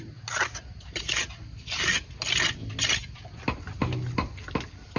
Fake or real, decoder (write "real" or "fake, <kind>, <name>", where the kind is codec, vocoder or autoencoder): real